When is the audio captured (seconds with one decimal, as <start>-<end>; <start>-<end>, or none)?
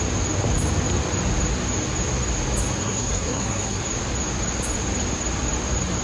0.0-2.8; 3.8-6.0